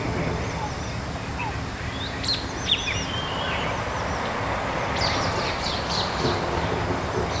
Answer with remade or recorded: recorded